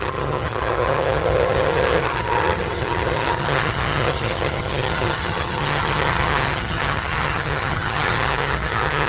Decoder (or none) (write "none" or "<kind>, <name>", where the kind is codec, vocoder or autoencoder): vocoder, HiFi-GAN